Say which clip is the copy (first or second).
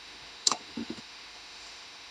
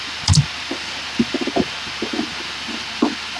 first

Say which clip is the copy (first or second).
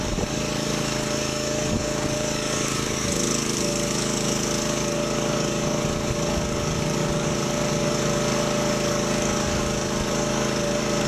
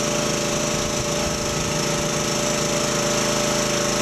first